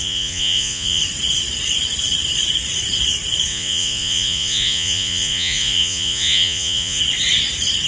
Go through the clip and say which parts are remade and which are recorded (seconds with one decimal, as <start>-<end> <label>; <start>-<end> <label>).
0.0-1.0 remade; 1.0-3.5 recorded; 3.5-7.0 remade; 7.0-7.9 recorded